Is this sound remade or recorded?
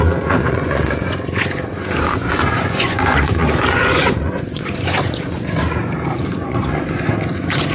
remade